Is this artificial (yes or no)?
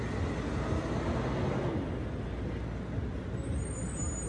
no